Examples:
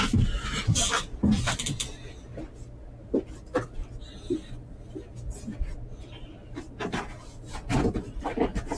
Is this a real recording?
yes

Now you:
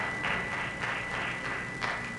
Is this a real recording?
yes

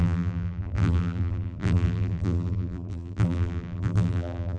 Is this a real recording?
no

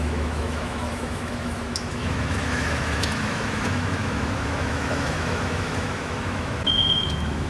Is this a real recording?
no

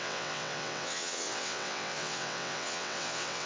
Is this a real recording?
no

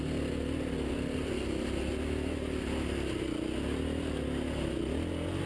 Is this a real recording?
yes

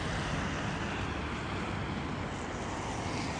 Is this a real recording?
yes